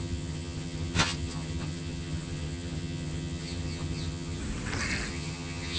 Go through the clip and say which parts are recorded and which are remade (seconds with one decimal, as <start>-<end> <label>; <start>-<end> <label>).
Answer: 0.0-4.4 remade; 4.4-5.1 recorded; 5.1-5.8 remade